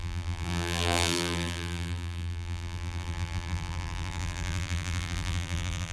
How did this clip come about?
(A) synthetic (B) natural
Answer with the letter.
A